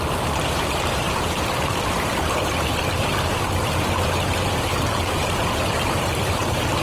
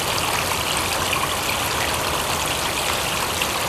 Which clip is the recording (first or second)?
second